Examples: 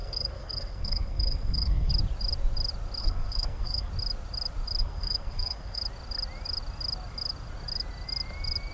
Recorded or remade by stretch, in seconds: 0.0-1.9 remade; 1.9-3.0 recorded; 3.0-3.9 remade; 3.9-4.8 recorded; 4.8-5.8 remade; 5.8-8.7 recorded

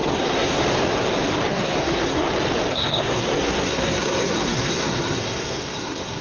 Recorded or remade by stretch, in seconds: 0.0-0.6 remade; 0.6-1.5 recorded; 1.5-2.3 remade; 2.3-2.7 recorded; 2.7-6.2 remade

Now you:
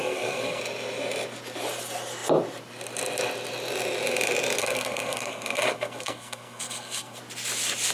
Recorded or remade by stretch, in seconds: 0.0-0.6 remade; 0.6-4.6 recorded; 4.6-7.2 remade; 7.2-7.9 recorded

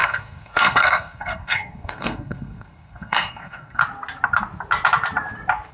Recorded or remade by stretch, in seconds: 0.0-3.8 remade; 3.8-5.7 recorded